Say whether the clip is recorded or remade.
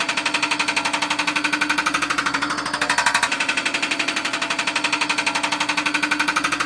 recorded